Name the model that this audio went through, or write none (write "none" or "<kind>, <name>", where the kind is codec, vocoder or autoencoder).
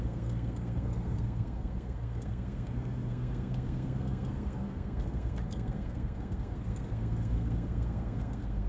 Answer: codec, SNAC